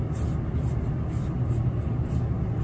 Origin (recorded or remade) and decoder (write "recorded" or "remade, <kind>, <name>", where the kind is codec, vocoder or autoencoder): recorded